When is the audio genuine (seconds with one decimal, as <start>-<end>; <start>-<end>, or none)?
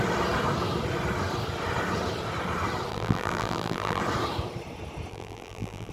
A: 0.0-2.9; 4.0-5.1